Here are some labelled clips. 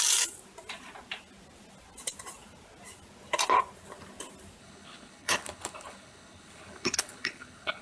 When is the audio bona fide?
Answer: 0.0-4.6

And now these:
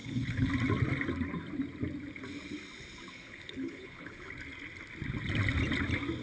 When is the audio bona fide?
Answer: 0.5-3.1; 4.3-6.2

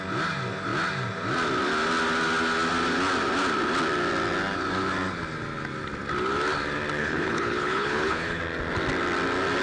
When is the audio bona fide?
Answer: 0.0-7.0; 8.4-9.6

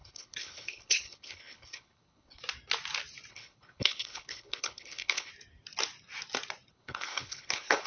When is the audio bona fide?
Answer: 2.4-3.3; 5.3-6.7